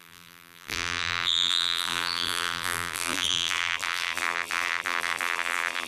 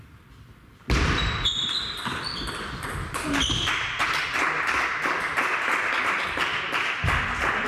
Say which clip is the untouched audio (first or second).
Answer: second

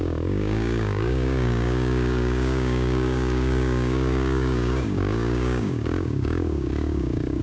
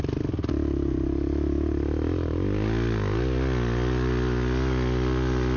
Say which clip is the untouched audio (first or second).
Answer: second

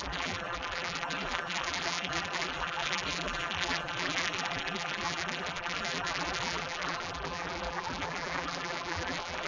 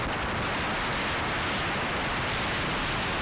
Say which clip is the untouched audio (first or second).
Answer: second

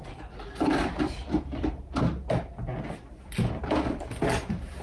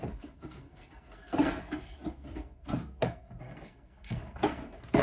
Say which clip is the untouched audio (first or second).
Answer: first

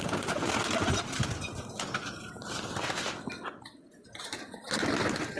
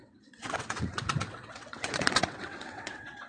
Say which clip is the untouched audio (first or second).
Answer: first